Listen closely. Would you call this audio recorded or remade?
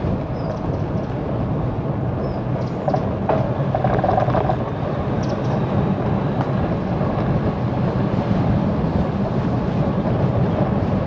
recorded